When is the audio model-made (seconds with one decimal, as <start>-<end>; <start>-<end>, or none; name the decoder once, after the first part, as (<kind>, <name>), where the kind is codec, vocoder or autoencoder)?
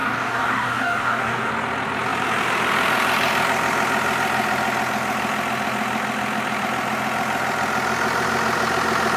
0.0-1.5 (codec, DAC)